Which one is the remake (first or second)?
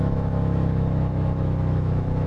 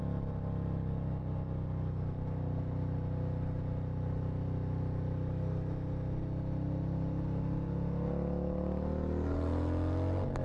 first